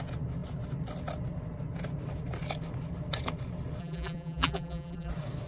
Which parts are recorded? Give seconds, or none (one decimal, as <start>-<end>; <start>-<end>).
0.0-3.8; 5.1-5.5